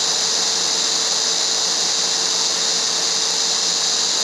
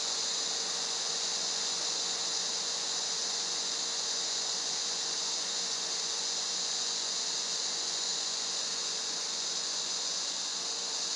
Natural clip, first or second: first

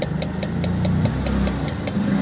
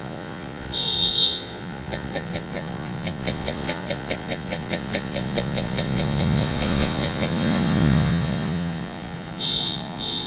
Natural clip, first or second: first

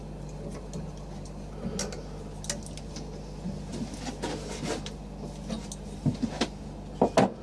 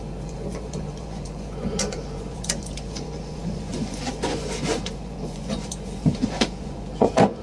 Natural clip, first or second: first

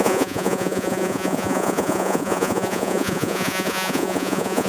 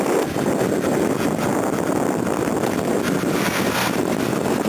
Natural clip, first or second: second